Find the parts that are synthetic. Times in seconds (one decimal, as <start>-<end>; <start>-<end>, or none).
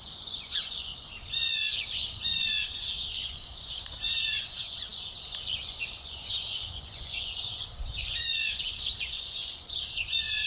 0.0-10.5